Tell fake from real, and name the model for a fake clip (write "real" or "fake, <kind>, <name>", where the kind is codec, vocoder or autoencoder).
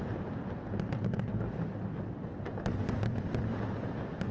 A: real